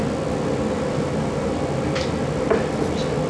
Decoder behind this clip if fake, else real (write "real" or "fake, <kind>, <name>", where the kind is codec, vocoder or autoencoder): real